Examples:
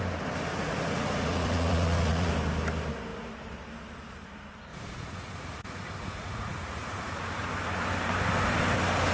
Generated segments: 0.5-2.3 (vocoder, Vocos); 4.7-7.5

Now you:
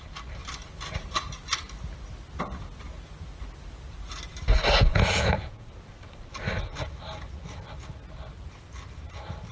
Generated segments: 4.9-5.7 (vocoder, Vocos)

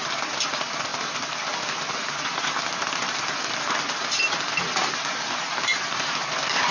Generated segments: none

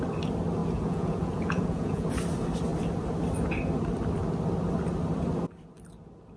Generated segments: 0.6-2.1 (vocoder, Vocos)

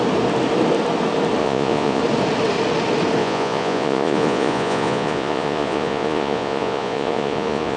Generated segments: 1.4-2.0 (vocoder, Vocos); 3.2-7.8

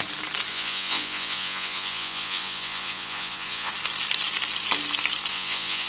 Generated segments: 0.5-3.7 (vocoder, Vocos); 5.3-5.9

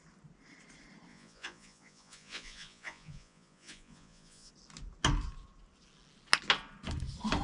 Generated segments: 1.1-4.5 (vocoder, Vocos)